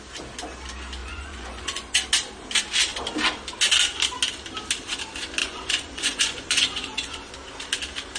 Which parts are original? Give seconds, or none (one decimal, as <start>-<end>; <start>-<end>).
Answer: 0.0-1.0; 2.0-5.4; 7.3-8.2